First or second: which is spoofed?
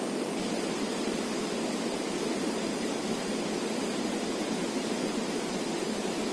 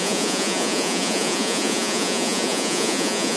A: second